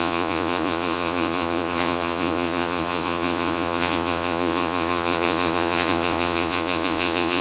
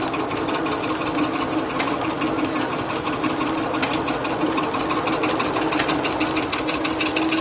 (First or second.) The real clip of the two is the second